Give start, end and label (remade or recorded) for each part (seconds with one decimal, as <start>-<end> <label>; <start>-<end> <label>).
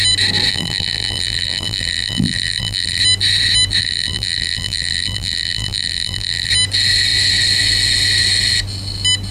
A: 0.0-0.5 recorded; 0.5-3.0 remade; 3.0-3.8 recorded; 3.8-6.5 remade; 6.5-9.3 recorded